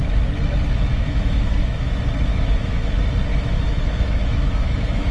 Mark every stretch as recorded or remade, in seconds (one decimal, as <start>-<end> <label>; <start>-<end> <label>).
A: 0.0-0.9 recorded; 0.9-1.9 remade; 1.9-2.3 recorded; 2.3-2.9 remade; 2.9-3.3 recorded; 3.3-5.1 remade